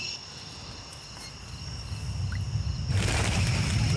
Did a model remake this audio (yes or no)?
no